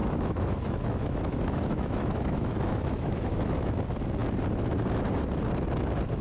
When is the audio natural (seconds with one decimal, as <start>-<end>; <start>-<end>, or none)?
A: 3.7-6.2

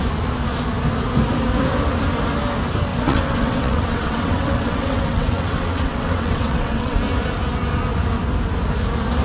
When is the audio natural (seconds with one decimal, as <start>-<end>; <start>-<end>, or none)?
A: 0.0-2.9; 7.0-9.2

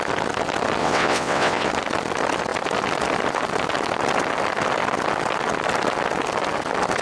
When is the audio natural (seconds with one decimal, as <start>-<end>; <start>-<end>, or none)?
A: 0.0-0.8; 1.7-7.0

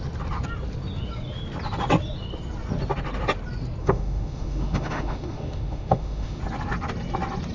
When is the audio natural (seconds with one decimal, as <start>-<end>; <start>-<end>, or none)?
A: 0.0-3.8; 6.4-7.5

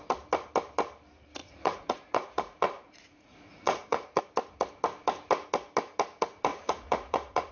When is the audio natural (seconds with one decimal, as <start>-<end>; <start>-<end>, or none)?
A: 0.0-1.4; 4.2-6.5

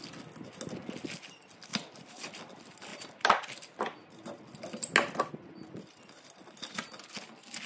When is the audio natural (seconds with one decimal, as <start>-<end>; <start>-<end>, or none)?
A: 0.0-7.7

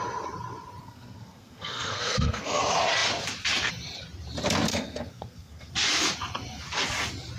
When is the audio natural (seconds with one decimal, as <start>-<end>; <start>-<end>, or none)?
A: 0.0-0.8; 2.6-4.7; 5.7-7.4

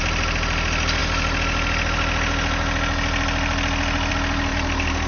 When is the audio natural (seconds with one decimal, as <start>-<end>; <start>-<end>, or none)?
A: 0.0-4.5